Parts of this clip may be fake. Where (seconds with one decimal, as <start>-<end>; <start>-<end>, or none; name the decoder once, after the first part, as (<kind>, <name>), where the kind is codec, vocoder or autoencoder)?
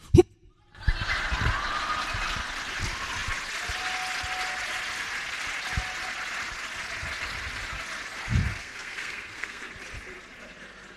8.6-9.7 (codec, SNAC)